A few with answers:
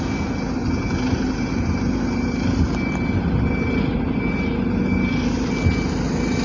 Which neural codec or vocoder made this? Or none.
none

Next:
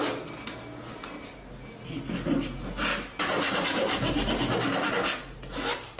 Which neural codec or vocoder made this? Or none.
none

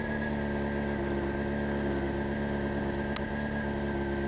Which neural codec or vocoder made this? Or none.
none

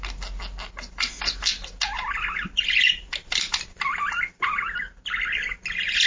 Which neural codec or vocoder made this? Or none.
none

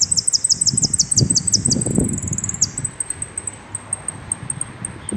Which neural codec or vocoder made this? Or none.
none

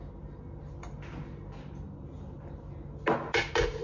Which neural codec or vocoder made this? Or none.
none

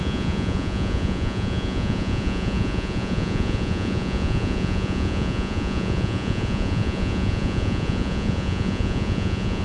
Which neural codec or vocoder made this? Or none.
vocoder, Vocos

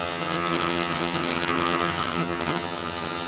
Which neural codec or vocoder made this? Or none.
vocoder, HiFi-GAN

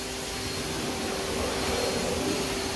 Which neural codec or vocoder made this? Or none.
none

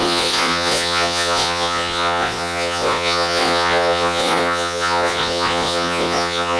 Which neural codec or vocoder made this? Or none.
vocoder, Vocos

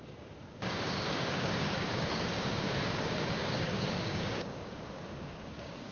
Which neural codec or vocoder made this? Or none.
codec, DAC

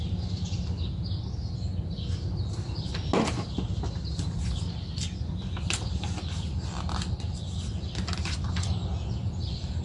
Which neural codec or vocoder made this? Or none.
none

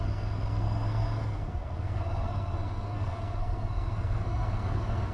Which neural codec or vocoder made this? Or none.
codec, SNAC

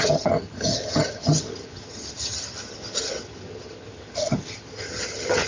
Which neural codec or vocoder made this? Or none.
vocoder, HiFi-GAN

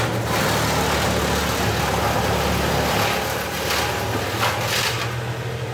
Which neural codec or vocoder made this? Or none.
none